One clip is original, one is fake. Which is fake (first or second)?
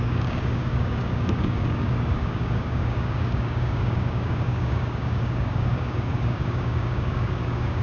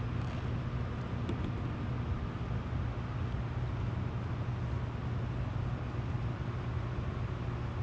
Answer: first